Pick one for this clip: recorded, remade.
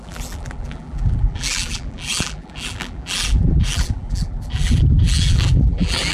remade